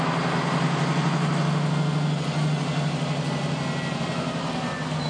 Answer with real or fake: real